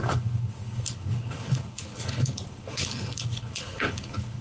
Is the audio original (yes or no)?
no